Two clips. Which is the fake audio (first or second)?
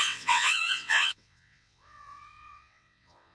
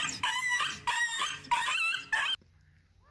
first